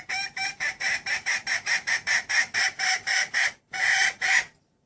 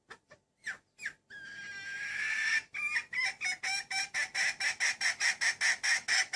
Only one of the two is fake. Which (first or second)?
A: first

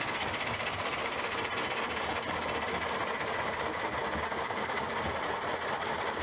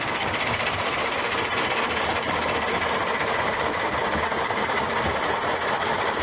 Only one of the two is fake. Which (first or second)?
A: second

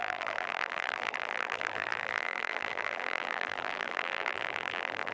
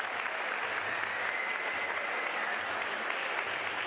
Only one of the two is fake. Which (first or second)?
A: first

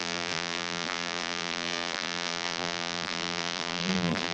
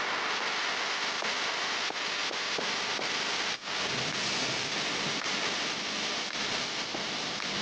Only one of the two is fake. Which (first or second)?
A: first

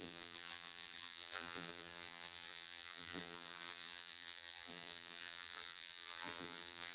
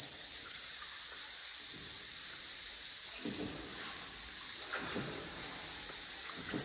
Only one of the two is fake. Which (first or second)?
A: first